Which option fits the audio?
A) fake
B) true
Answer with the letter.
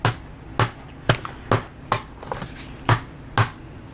B